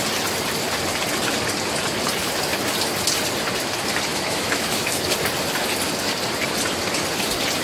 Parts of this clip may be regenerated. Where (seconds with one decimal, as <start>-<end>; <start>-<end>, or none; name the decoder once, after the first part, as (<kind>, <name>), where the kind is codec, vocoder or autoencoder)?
4.1-5.0 (autoencoder, DAC-VAE)